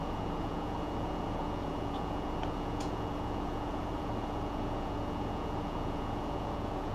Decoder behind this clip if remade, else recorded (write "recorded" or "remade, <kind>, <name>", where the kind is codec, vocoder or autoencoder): remade, vocoder, Vocos